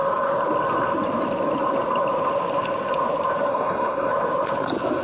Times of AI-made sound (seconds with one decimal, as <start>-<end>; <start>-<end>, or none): 3.5-4.1